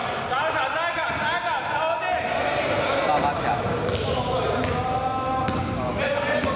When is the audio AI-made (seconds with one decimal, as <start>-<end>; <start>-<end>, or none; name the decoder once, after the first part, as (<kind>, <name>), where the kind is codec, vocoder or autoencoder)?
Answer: none